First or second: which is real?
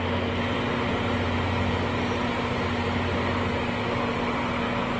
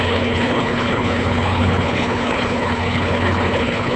first